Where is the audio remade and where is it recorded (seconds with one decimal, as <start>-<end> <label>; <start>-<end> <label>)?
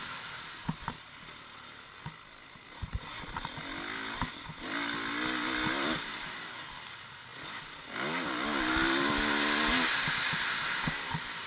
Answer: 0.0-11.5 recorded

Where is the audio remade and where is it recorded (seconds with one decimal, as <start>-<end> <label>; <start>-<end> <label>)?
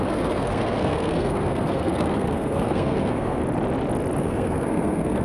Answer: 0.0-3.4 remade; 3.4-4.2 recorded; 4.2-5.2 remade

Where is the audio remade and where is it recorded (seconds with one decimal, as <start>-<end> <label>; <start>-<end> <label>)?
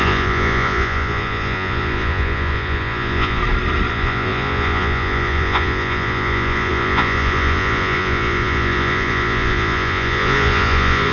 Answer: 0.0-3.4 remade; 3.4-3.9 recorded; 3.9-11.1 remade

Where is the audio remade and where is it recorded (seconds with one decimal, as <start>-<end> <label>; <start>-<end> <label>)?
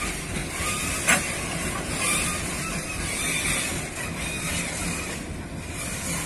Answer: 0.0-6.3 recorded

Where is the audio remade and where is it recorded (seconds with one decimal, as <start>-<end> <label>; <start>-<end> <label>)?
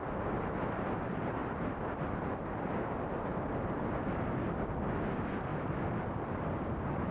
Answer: 0.0-5.5 recorded; 5.5-7.1 remade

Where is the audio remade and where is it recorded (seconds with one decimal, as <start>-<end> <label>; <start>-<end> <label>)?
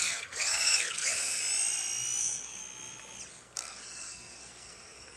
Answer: 0.0-1.4 remade; 1.4-2.2 recorded; 2.2-2.6 remade; 2.6-3.3 recorded; 3.3-5.2 remade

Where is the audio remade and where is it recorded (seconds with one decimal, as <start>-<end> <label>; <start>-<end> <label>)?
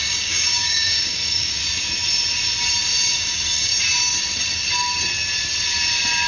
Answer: 0.0-1.6 remade; 1.6-3.2 recorded; 3.2-3.7 remade; 3.7-6.3 recorded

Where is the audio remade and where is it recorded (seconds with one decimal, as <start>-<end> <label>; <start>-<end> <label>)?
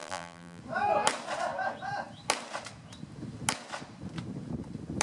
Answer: 0.0-0.6 remade; 0.6-5.0 recorded